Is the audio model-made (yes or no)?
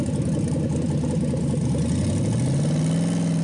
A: no